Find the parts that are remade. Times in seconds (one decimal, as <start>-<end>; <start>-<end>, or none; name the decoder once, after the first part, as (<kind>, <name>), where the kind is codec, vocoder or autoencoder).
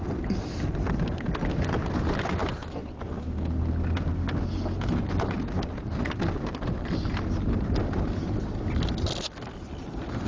none